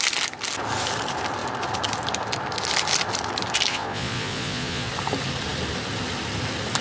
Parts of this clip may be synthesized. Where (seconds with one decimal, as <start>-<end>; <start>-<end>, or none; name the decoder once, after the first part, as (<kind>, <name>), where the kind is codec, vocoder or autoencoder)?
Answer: 3.7-4.9 (vocoder, Vocos)